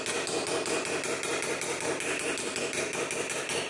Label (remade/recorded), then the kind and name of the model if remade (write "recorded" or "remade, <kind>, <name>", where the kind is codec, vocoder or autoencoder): recorded